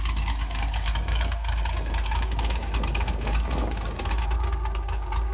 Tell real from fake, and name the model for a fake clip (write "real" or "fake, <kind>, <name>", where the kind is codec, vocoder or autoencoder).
fake, codec, DAC